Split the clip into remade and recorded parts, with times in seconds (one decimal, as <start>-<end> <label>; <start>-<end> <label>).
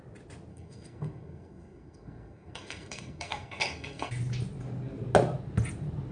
0.0-0.5 recorded; 0.5-4.1 remade; 4.1-6.1 recorded